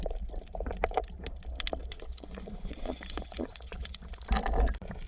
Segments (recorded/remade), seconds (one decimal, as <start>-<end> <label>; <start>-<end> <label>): 0.0-1.8 recorded; 1.8-4.1 remade; 4.1-5.1 recorded